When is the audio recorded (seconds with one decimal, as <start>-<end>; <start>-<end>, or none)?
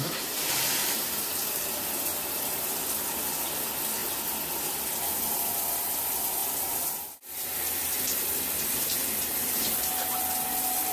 0.0-0.8; 2.4-10.9